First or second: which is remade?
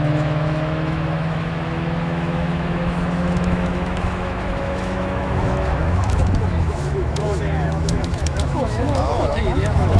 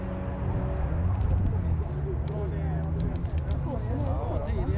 first